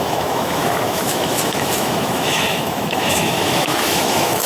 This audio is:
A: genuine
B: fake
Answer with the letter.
B